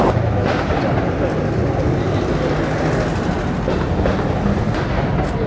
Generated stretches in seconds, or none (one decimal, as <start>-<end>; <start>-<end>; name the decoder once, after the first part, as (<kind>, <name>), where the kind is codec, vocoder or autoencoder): none